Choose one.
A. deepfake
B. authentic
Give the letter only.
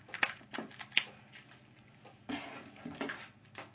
B